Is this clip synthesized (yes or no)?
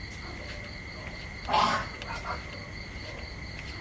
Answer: no